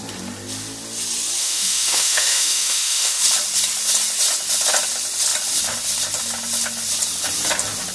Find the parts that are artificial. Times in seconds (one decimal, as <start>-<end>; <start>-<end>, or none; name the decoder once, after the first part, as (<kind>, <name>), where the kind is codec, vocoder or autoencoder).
1.4-3.2 (autoencoder, DAC-VAE)